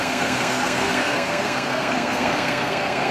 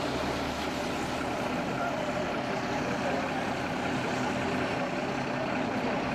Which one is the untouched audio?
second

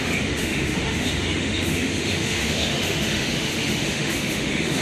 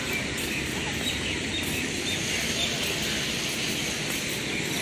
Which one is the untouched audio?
second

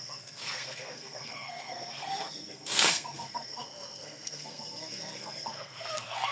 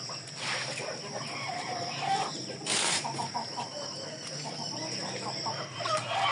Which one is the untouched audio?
second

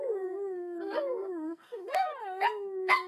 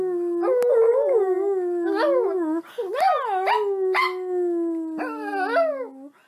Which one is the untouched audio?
second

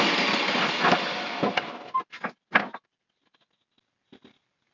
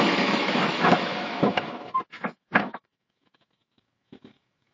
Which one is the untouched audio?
first